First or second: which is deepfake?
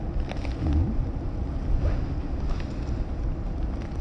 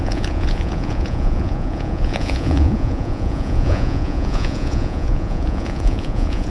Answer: second